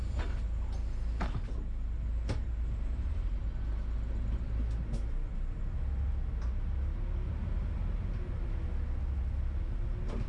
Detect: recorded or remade recorded